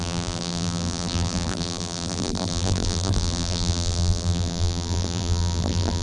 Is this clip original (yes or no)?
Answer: no